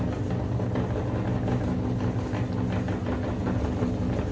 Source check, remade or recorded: recorded